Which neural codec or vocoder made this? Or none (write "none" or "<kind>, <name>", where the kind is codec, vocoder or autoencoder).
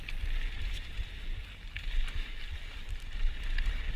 none